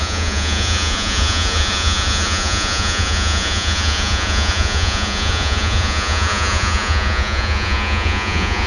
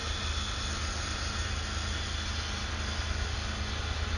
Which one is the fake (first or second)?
first